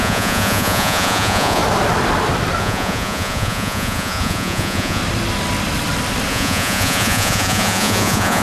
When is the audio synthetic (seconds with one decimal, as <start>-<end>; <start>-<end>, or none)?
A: 0.0-1.6; 2.6-5.0; 6.3-8.4